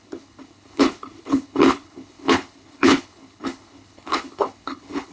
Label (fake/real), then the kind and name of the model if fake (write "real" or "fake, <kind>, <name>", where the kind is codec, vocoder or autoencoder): fake, codec, HILCodec